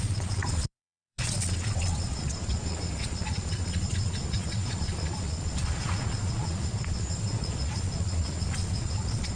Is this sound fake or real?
fake